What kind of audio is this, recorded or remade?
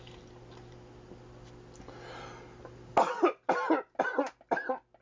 recorded